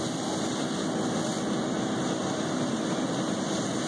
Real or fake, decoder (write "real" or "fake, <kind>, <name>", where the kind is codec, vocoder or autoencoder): real